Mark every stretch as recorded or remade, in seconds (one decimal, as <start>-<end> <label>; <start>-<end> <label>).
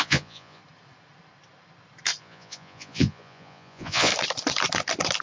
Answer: 0.0-0.6 remade; 0.6-2.2 recorded; 2.2-4.1 remade; 4.1-5.2 recorded